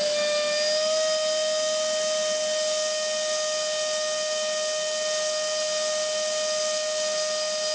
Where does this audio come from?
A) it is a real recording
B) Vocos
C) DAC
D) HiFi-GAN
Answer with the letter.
A